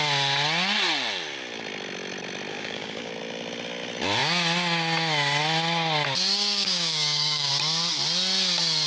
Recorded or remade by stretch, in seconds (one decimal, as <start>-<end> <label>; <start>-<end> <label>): 0.0-2.5 recorded; 2.5-3.1 remade; 3.1-6.3 recorded; 6.3-7.5 remade; 7.5-8.9 recorded